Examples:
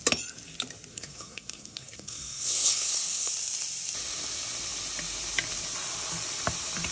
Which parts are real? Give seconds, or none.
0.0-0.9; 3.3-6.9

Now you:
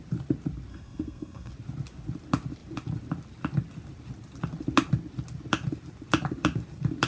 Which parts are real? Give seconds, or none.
0.0-0.7; 1.5-7.1

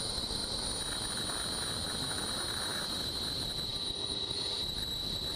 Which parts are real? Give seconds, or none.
0.0-5.4

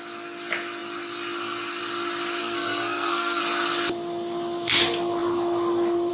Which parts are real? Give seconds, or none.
0.0-2.4; 3.4-6.1

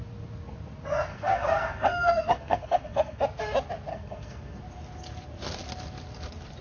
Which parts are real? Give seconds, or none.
0.0-1.1; 3.2-3.9; 4.6-6.6